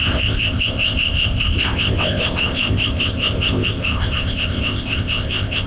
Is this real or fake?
fake